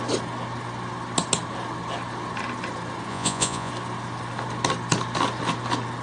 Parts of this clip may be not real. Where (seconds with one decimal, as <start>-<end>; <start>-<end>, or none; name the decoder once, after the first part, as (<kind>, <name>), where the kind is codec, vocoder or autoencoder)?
3.1-3.7 (vocoder, Vocos)